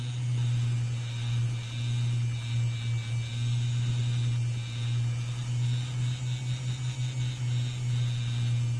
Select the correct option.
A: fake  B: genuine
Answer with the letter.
B